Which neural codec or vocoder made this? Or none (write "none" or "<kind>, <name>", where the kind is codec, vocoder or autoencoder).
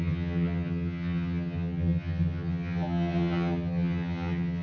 vocoder, HiFi-GAN